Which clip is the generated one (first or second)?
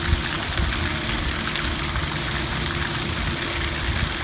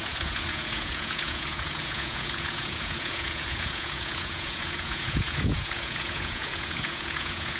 second